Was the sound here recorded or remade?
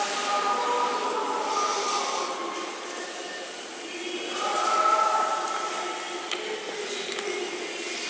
recorded